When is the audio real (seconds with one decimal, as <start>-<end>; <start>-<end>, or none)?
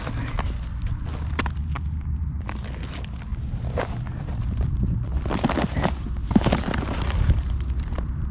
0.0-3.3